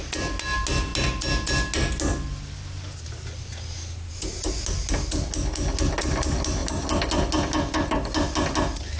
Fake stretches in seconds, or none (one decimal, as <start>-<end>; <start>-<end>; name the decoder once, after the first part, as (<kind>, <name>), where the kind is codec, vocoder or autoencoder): none